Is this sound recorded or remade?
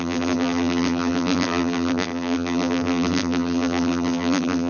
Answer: remade